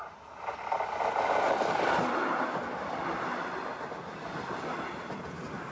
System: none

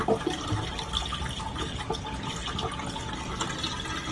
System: none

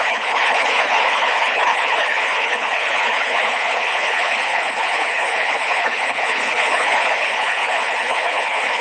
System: codec, HILCodec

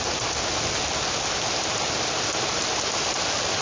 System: none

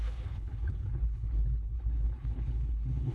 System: codec, HILCodec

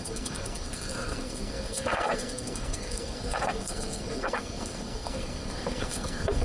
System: codec, SNAC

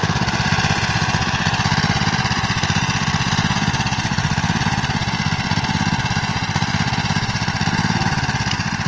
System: none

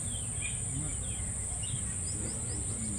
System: none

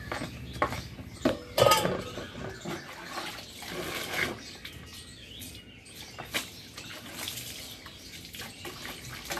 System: none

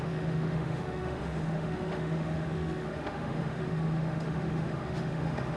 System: autoencoder, DAC-VAE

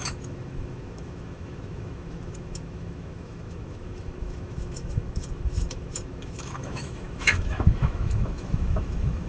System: autoencoder, DAC-VAE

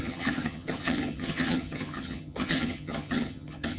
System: vocoder, HiFi-GAN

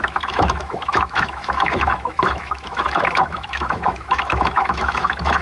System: autoencoder, DAC-VAE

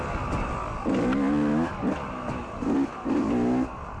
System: none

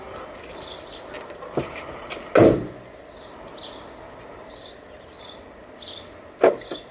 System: none